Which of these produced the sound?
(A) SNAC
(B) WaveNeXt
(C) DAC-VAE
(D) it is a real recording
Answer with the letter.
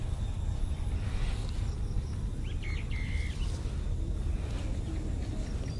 D